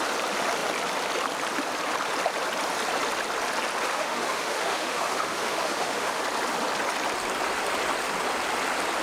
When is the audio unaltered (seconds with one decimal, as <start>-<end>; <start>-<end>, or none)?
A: 0.0-3.9; 6.2-9.0